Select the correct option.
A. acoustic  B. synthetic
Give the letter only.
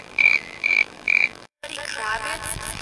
B